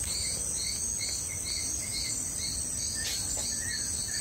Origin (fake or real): real